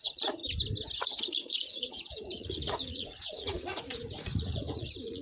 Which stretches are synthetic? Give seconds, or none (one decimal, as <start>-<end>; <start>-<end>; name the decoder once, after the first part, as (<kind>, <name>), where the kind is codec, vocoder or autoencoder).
0.0-0.4 (vocoder, Vocos); 1.0-5.2